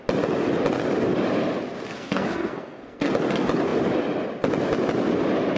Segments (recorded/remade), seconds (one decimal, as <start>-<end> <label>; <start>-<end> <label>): 0.0-1.9 recorded; 1.9-3.1 remade; 3.1-5.6 recorded